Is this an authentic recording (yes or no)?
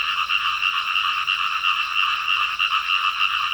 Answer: yes